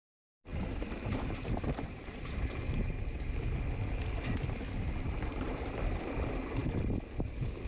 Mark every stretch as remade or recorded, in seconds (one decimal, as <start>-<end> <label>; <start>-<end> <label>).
0.0-0.5 recorded; 0.5-3.3 remade; 3.3-5.3 recorded; 5.3-6.0 remade; 6.0-7.7 recorded